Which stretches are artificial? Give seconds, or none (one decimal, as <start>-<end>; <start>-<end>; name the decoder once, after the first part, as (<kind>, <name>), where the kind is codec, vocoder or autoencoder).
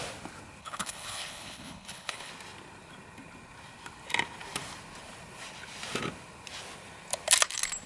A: 0.6-2.3 (codec, HILCodec)